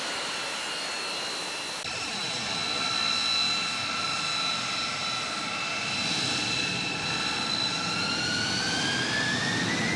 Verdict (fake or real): real